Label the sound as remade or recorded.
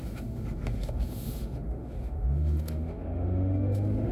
remade